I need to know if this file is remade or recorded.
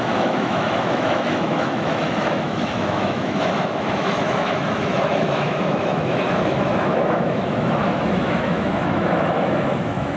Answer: remade